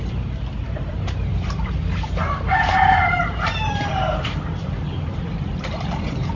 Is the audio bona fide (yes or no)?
no